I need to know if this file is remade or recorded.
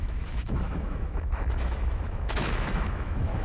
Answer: remade